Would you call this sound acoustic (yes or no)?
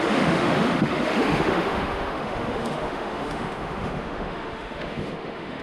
no